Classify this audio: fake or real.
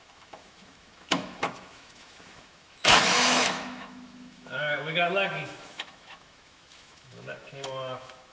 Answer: fake